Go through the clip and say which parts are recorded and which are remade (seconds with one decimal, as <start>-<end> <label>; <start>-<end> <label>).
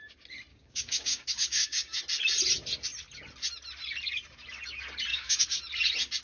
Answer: 0.0-0.5 recorded; 0.5-2.0 remade; 2.0-5.1 recorded; 5.1-5.6 remade; 5.6-6.2 recorded